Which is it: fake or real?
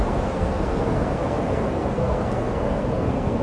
fake